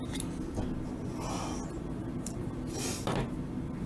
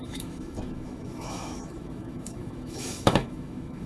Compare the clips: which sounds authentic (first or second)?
first